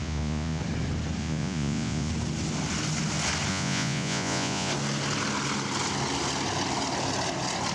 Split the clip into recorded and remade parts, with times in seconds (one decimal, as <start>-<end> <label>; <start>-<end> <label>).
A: 0.0-0.6 remade; 0.6-1.2 recorded; 1.2-2.1 remade; 2.1-3.5 recorded; 3.5-4.7 remade; 4.7-7.7 recorded